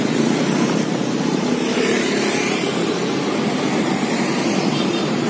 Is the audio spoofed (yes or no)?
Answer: yes